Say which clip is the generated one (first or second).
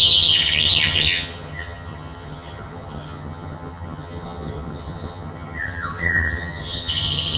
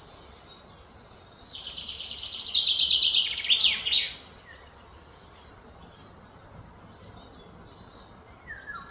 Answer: first